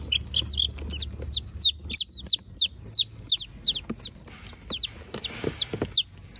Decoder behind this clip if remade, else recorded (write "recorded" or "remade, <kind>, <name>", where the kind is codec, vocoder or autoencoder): recorded